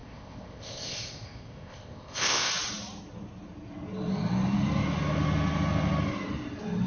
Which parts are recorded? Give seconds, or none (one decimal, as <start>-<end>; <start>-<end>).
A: 2.5-6.9